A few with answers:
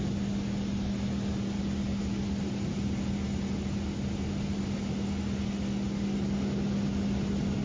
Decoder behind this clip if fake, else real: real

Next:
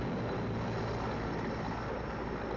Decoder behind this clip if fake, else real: real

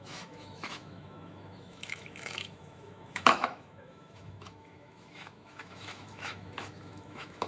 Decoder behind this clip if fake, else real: fake, autoencoder, DAC-VAE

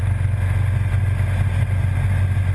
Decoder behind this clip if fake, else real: real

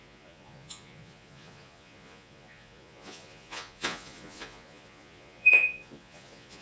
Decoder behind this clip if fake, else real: fake, vocoder, Vocos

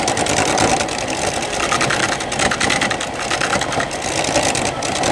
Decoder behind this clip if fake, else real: real